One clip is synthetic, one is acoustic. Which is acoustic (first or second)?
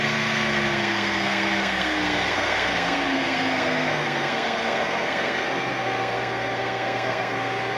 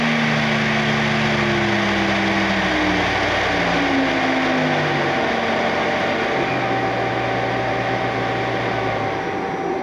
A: second